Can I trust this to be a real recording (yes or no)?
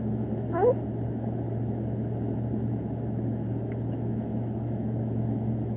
no